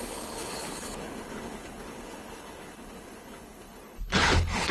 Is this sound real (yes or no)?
no